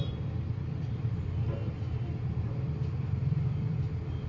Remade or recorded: remade